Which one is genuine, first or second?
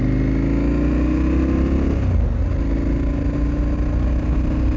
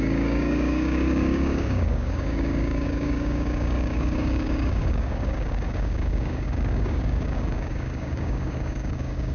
first